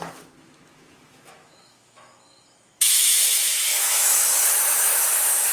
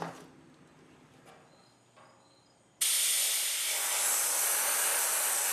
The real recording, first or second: second